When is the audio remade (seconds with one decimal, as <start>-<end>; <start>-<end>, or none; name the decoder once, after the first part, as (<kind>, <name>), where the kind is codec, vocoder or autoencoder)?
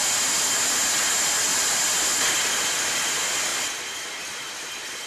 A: none